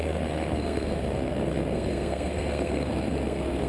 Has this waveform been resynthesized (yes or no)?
yes